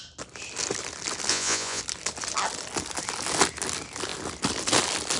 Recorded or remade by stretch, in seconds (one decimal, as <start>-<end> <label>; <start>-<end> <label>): 0.0-1.3 recorded; 1.3-1.8 remade; 1.8-5.2 recorded